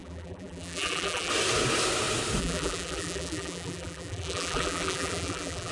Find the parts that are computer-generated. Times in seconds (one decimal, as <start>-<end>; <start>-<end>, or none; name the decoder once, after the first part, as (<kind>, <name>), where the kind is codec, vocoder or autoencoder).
0.0-1.3 (vocoder, BigVGAN v2); 2.4-5.7